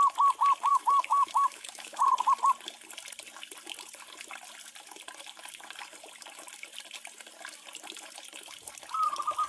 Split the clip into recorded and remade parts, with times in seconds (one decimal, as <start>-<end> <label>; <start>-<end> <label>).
0.0-0.7 recorded; 0.7-2.0 remade; 2.0-9.5 recorded